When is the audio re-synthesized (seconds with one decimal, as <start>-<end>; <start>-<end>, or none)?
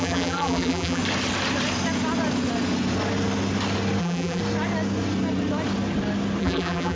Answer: 0.0-1.0; 4.0-4.4; 6.4-7.0